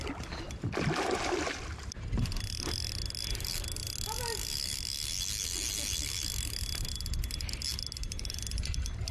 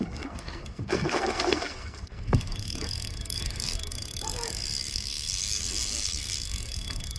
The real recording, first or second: first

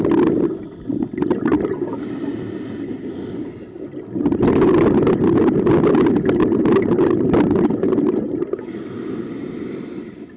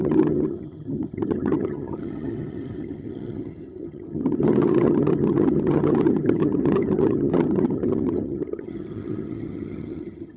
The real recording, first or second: first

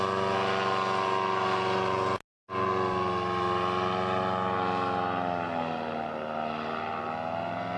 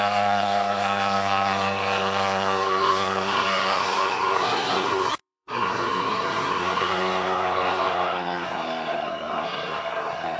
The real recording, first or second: first